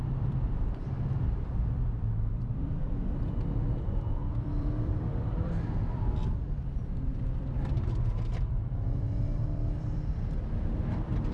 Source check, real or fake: fake